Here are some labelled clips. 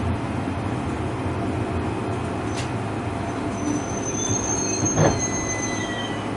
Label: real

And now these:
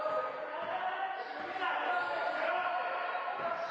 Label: real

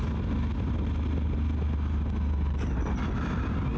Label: real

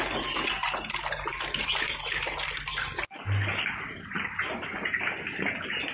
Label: real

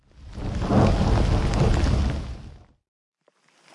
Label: real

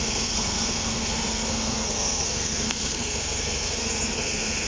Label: fake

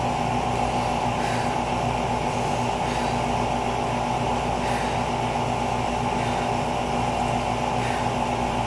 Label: real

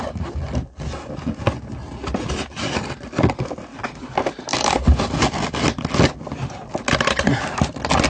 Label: real